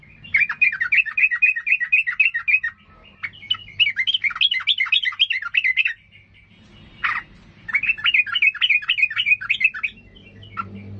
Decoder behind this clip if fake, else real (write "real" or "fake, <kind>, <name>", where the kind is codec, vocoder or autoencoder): real